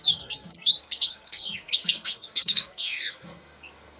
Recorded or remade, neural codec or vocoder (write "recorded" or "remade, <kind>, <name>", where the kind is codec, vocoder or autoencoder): remade, codec, SNAC